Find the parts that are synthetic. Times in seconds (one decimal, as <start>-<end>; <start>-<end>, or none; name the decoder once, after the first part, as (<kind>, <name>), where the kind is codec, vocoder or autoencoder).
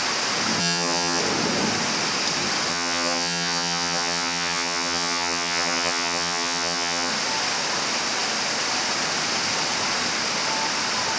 0.6-1.2 (vocoder, HiFi-GAN); 2.7-7.1